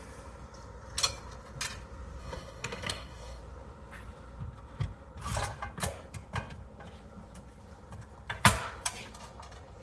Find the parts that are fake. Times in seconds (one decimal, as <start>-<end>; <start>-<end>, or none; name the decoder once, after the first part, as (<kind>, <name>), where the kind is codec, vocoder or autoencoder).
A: 2.2-3.4 (codec, SNAC)